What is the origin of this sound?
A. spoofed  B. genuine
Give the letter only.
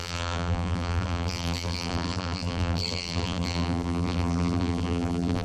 A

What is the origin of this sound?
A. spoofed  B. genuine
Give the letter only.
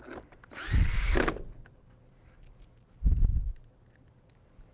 B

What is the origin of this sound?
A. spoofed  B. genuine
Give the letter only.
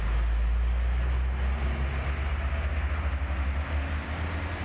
B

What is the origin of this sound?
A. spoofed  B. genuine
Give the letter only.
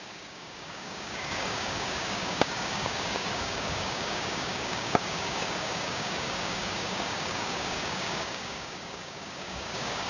A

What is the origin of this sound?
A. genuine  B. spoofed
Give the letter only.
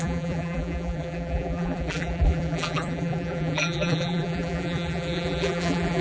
B